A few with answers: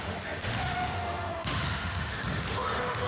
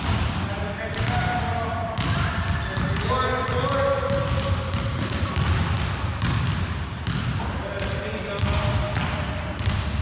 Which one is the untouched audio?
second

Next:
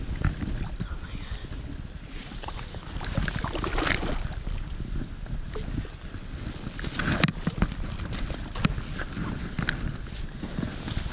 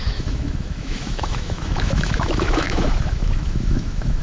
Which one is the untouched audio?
first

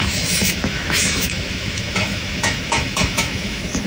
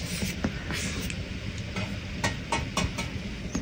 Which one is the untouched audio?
second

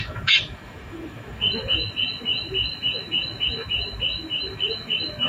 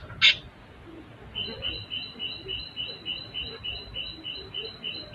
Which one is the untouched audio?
second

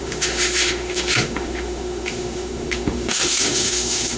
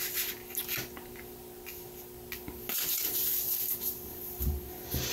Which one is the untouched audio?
second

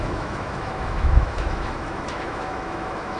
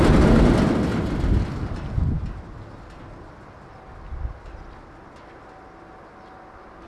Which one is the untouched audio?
second